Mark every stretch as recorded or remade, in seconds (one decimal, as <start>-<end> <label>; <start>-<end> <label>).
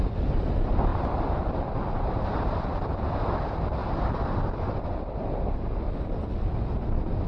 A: 0.0-7.3 recorded